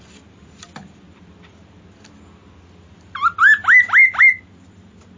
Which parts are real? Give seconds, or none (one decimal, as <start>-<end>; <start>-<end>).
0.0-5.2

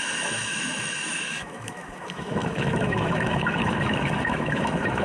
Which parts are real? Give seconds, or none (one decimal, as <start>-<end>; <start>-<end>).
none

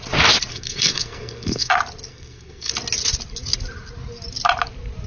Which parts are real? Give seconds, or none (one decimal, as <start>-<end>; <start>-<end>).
0.0-0.5; 1.7-2.1; 2.7-5.1